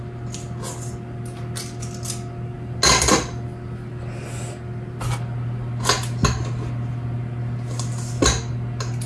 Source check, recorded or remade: recorded